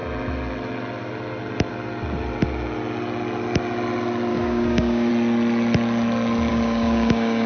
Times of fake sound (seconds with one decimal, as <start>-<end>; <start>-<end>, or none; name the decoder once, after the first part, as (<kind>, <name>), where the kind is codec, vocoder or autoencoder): 4.3-5.1 (codec, DAC); 6.5-7.5